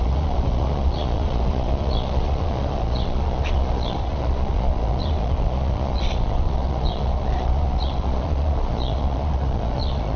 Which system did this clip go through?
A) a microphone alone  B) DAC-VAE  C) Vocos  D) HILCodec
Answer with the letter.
C